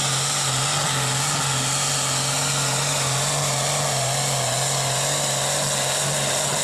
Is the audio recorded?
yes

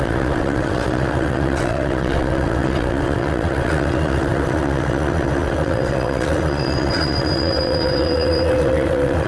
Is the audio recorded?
no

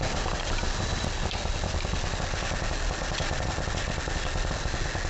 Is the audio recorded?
yes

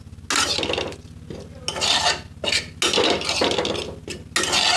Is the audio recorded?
yes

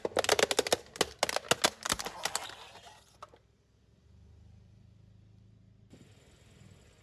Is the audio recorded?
yes